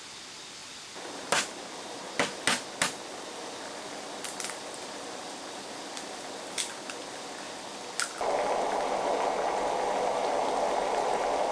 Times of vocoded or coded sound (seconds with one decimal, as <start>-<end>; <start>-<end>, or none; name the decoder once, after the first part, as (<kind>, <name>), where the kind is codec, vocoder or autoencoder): none